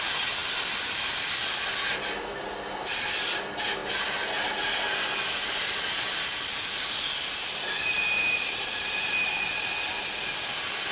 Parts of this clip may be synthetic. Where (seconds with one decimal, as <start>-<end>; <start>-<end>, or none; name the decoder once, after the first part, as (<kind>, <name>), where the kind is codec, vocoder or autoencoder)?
none